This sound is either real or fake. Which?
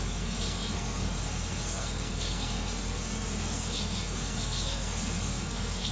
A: fake